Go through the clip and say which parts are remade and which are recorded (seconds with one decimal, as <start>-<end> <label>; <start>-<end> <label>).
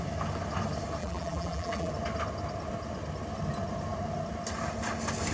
0.0-1.0 recorded; 1.0-1.9 remade; 1.9-5.3 recorded